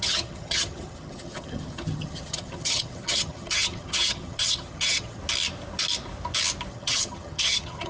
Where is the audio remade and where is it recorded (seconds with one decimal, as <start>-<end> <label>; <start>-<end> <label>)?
0.0-5.2 remade; 5.2-6.7 recorded; 6.7-7.9 remade